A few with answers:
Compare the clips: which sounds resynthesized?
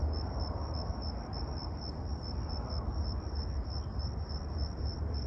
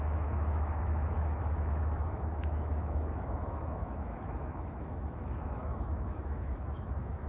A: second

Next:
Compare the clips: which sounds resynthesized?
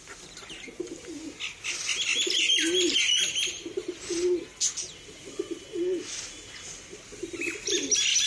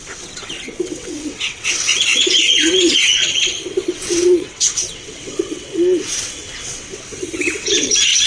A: second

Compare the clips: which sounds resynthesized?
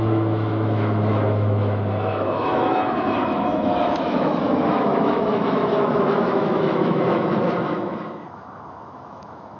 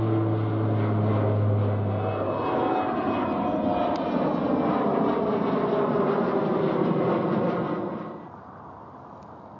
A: first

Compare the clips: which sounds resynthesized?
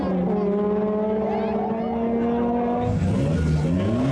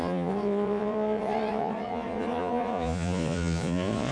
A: second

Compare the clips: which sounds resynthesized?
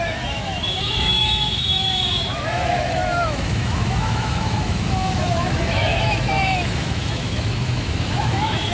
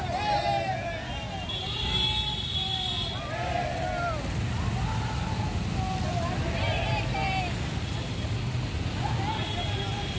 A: first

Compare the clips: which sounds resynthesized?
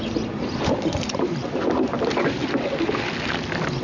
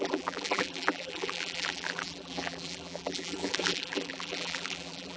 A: second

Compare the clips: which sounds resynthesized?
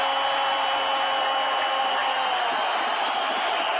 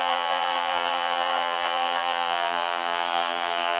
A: second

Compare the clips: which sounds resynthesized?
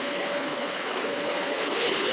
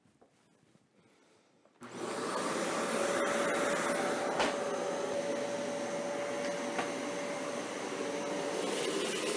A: first